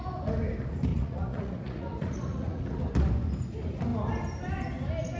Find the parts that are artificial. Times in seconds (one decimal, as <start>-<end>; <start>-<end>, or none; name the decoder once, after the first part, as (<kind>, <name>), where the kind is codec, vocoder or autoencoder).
0.9-2.6 (vocoder, Vocos)